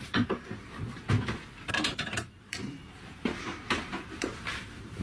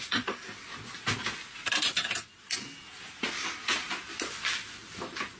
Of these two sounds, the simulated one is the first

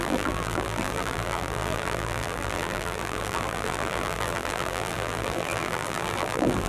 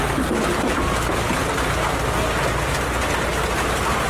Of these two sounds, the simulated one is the first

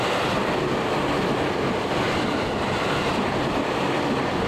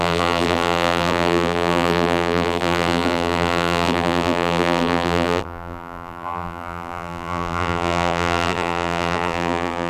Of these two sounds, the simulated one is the second